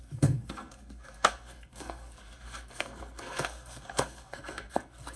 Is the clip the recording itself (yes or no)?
no